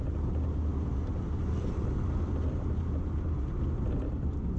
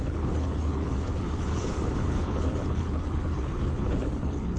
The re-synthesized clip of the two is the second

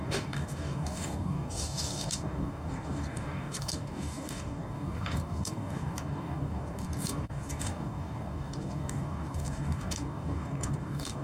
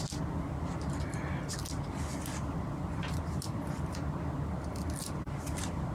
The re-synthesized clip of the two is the first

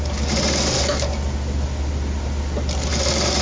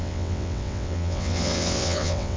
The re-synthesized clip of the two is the second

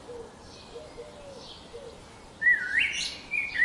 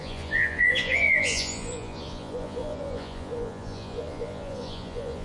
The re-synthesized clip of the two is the second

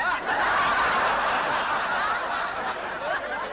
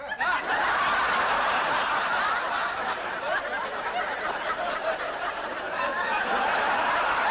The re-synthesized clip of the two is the second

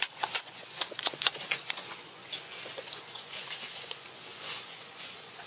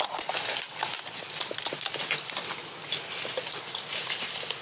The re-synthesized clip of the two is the first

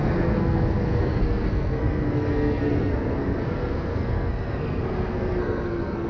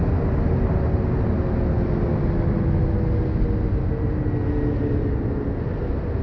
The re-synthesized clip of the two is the first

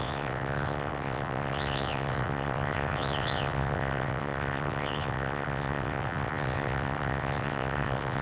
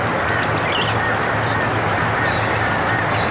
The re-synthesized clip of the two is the first